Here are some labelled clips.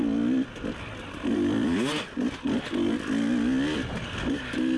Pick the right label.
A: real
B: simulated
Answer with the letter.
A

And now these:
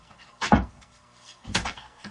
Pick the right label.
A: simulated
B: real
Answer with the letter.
A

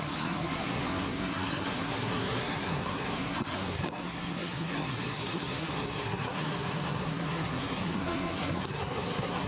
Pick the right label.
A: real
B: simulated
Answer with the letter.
B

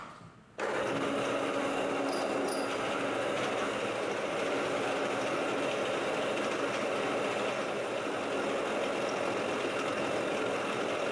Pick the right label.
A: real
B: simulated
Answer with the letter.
A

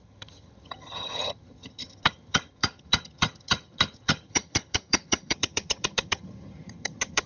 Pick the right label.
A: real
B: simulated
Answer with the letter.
B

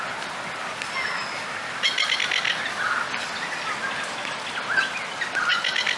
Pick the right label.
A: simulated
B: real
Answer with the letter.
B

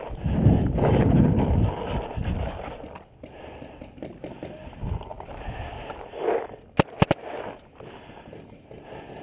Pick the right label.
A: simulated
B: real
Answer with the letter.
B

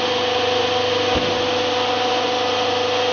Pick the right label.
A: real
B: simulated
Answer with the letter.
A